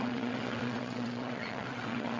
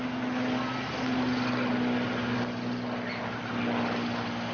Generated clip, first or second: first